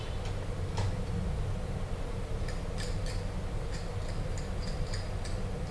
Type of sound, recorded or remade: recorded